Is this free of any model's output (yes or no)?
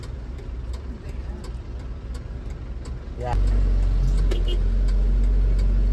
yes